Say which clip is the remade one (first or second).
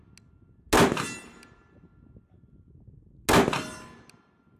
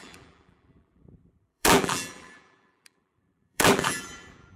second